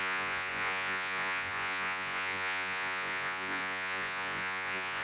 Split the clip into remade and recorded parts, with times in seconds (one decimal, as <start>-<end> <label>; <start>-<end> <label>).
0.0-5.0 remade